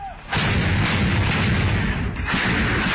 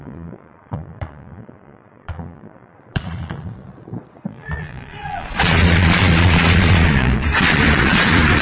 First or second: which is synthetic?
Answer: second